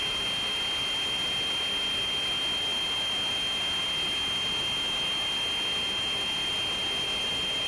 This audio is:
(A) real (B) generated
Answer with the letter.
A